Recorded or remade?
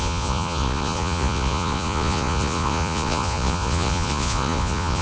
remade